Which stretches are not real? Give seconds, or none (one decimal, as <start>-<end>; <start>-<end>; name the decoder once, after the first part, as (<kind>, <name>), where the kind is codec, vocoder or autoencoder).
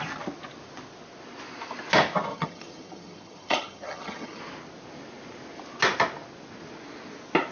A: 2.3-4.4 (vocoder, HiFi-GAN)